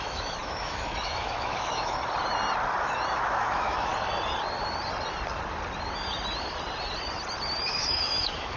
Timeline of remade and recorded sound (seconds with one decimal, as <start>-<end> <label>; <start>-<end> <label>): 0.0-2.0 remade; 2.0-2.8 recorded; 2.8-3.9 remade; 3.9-7.7 recorded; 7.7-8.6 remade